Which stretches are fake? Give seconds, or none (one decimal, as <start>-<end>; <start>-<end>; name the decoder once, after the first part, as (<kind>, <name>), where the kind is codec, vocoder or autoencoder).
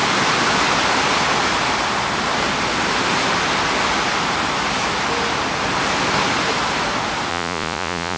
7.3-8.2 (vocoder, Vocos)